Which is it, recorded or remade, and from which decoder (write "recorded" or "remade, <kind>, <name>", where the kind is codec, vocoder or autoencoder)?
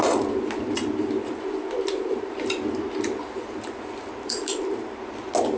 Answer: recorded